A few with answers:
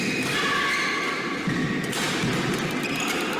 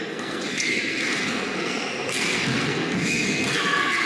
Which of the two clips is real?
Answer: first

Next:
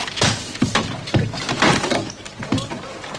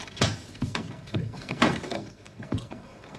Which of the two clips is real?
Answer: first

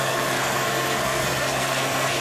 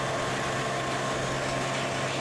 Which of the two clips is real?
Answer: second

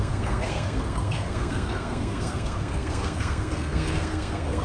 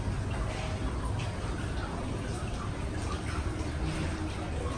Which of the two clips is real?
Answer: second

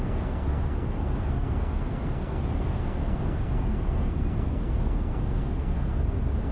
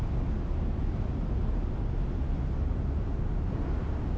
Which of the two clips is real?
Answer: second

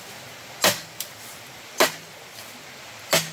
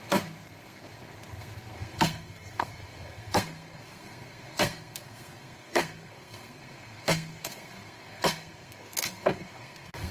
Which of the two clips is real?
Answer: first